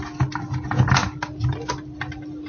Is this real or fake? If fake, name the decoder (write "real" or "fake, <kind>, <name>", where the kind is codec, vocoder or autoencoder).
real